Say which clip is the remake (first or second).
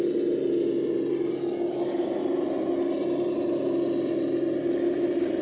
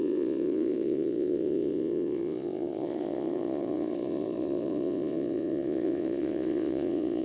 second